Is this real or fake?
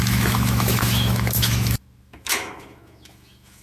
fake